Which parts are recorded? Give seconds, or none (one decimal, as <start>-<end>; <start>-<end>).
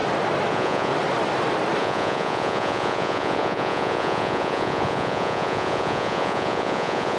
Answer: 0.0-0.5; 0.9-1.8